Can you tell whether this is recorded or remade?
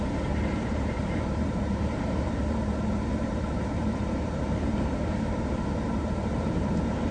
remade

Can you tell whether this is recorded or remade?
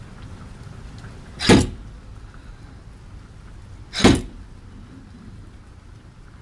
recorded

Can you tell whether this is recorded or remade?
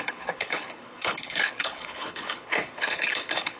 remade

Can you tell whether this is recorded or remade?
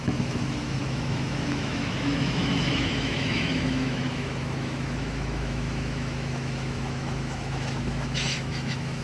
remade